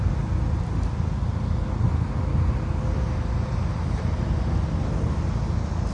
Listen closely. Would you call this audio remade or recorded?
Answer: recorded